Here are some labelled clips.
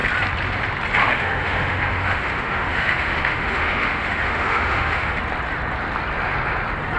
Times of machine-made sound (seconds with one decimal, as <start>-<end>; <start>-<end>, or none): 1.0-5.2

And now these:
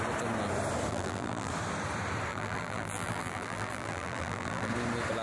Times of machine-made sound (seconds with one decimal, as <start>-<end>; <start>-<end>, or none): 0.9-1.5; 2.3-4.7

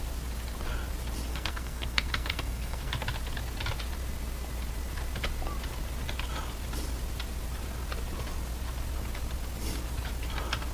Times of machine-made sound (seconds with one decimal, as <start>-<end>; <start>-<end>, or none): 1.3-2.9